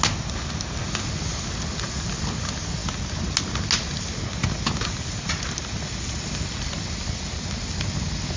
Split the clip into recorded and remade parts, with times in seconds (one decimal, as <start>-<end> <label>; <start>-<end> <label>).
0.0-8.4 recorded